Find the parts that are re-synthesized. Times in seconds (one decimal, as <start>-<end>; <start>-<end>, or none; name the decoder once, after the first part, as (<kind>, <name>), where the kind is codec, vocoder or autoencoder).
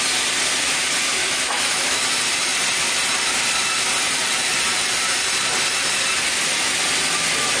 1.2-2.0 (autoencoder, DAC-VAE)